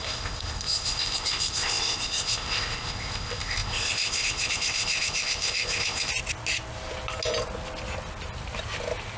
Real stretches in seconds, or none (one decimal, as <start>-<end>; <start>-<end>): 6.1-9.2